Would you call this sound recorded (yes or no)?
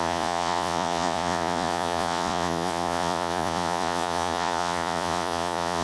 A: no